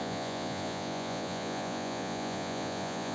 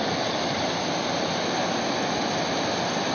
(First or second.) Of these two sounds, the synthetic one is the first